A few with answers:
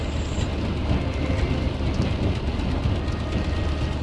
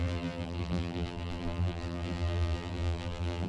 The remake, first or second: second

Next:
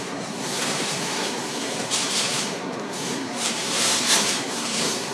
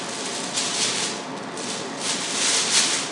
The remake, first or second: first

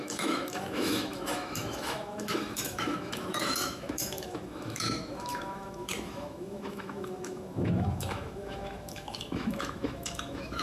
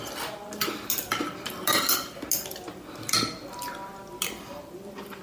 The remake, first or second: first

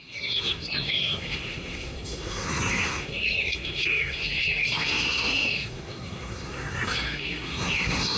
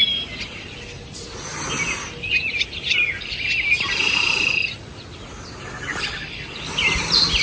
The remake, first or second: first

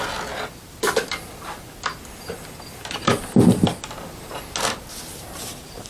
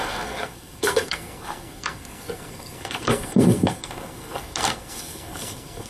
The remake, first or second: second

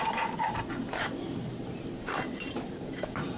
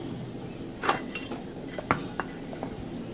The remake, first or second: first